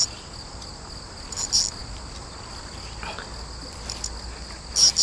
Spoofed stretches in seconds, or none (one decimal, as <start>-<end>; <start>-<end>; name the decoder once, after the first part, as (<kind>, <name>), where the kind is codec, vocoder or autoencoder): none